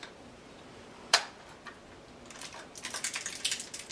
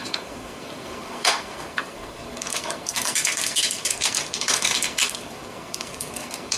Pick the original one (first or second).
first